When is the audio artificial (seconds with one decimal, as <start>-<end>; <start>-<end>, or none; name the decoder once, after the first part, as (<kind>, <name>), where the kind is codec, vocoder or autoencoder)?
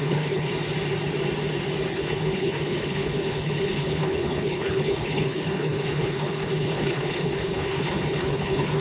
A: 0.0-0.5 (codec, HILCodec); 1.9-8.8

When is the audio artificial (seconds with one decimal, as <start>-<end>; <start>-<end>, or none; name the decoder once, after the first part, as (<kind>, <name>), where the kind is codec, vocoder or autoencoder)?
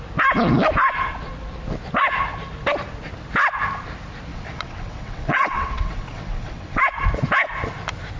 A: 4.3-6.8 (vocoder, WaveNeXt)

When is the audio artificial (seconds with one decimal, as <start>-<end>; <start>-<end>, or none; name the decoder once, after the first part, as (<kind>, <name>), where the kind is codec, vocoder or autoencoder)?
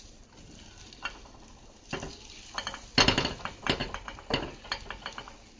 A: none